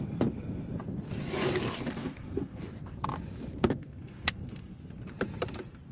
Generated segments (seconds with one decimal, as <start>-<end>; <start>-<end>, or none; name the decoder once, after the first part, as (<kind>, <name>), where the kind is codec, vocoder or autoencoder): 2.0-2.6 (codec, SNAC); 3.6-4.8